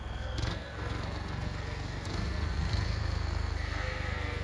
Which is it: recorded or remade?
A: remade